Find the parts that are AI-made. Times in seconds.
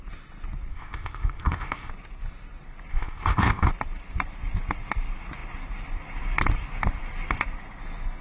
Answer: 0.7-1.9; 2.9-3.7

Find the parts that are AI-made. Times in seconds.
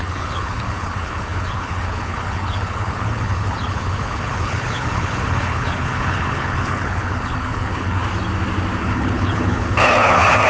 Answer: 0.0-8.0; 8.8-10.5